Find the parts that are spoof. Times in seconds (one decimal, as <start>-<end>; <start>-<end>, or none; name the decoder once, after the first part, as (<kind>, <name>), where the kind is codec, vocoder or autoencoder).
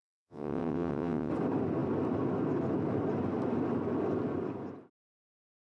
0.0-1.3 (vocoder, WaveNeXt)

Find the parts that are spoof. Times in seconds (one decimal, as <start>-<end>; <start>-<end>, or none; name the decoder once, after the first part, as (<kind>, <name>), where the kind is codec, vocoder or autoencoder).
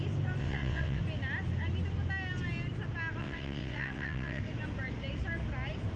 0.4-1.0 (vocoder, WaveNeXt); 3.2-4.4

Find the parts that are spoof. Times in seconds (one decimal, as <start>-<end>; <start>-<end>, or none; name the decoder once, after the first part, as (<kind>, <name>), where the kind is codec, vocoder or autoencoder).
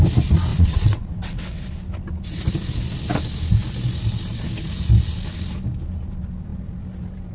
0.5-1.6 (vocoder, WaveNeXt)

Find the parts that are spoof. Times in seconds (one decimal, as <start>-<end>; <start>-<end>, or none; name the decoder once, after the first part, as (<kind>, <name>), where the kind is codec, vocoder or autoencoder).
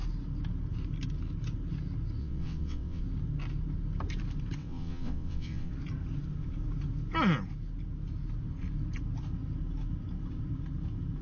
2.2-3.0 (vocoder, WaveNeXt); 4.6-5.7